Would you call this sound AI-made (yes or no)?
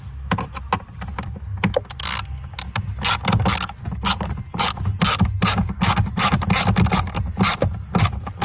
no